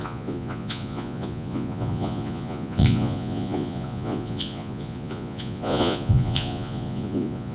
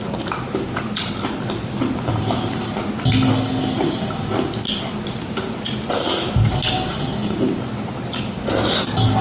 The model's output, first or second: first